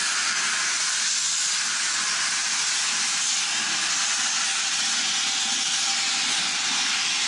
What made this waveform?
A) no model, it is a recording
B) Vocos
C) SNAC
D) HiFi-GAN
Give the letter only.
A